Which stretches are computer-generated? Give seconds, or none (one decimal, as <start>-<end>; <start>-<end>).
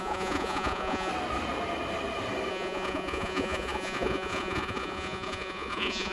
0.0-1.1; 2.5-6.1